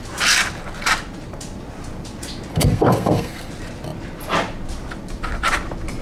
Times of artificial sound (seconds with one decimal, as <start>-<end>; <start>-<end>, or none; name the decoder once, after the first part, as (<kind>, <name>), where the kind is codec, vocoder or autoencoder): 2.5-3.5 (codec, SNAC)